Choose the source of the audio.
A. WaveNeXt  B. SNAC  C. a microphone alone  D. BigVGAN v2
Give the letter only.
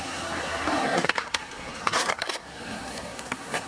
B